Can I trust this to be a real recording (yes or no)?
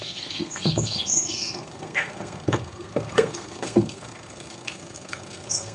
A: no